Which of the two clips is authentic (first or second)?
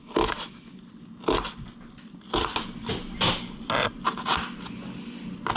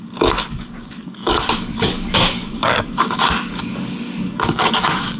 first